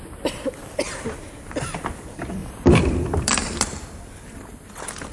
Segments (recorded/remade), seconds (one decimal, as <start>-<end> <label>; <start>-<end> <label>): 0.0-2.4 recorded; 2.4-4.4 remade; 4.4-5.1 recorded